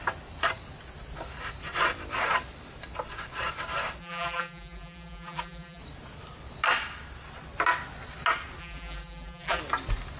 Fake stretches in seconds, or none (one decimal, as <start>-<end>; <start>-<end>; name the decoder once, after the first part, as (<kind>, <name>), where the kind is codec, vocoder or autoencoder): 4.0-5.8 (vocoder, BigVGAN v2); 8.6-9.6